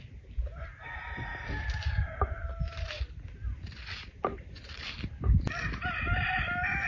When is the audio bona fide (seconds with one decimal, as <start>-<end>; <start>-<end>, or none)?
0.0-1.3; 5.4-6.9